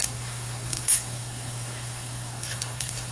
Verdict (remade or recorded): remade